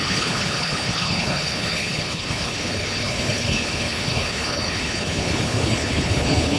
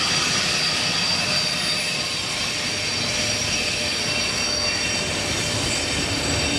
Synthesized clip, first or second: first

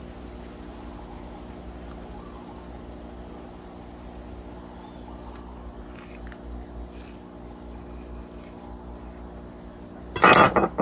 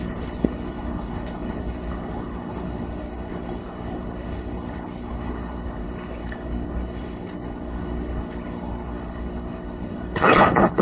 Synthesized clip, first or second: second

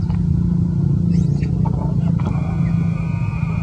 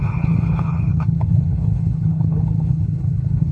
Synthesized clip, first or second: second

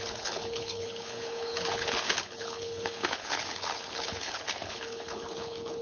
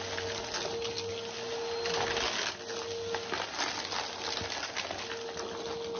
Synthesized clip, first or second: first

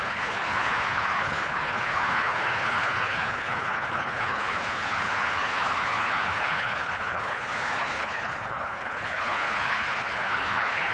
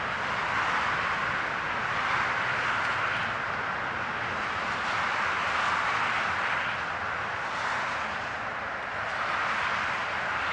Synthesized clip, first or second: first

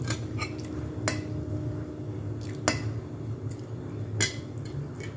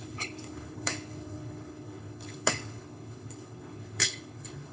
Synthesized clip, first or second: second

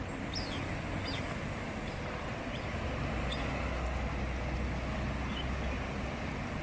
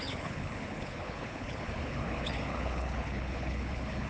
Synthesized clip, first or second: second